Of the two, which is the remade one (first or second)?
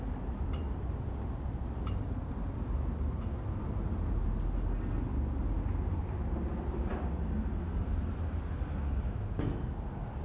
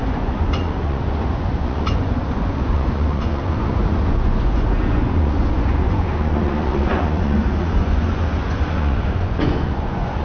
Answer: second